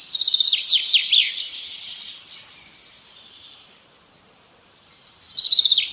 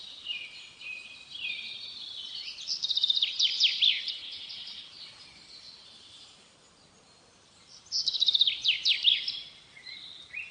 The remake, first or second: second